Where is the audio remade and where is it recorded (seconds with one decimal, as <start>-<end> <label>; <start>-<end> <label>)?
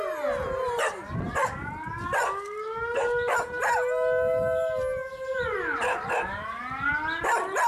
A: 0.0-7.7 recorded